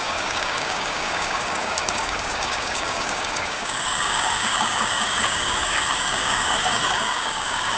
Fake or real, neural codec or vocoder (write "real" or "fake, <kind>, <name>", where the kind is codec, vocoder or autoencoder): fake, codec, DAC